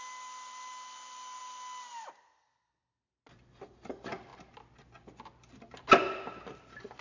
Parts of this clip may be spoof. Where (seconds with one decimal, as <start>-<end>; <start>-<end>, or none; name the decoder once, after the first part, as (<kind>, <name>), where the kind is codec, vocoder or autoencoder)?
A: none

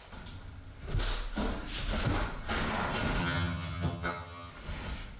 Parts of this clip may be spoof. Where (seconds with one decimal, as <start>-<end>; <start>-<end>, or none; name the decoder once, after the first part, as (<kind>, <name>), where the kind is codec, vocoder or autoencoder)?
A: 3.2-4.5 (vocoder, HiFi-GAN)

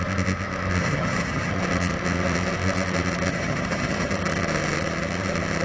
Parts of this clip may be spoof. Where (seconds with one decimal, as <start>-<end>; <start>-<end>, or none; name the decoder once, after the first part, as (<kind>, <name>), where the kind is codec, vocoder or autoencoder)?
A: 0.8-1.5 (vocoder, HiFi-GAN); 3.3-4.1

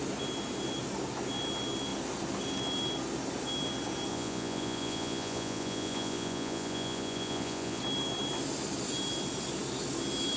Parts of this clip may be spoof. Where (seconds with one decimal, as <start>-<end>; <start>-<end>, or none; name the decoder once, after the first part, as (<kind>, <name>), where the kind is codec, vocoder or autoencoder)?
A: 4.1-7.8 (vocoder, Vocos)

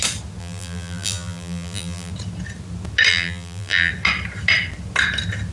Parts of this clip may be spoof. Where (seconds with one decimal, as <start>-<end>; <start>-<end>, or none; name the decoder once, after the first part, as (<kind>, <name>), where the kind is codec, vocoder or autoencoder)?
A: 0.4-2.1 (vocoder, BigVGAN v2); 3.1-3.9

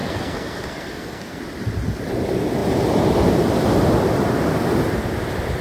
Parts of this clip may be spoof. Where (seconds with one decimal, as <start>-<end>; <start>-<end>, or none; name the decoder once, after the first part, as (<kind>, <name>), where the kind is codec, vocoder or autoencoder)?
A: 0.0-1.4 (codec, SNAC)